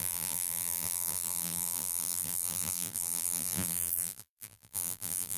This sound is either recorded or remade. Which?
remade